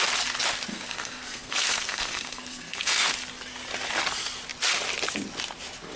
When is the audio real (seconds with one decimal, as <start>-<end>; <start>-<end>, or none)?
0.0-0.7; 3.1-6.0